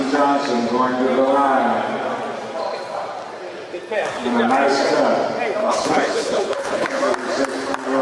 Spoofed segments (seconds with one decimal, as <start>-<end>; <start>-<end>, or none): 5.6-7.0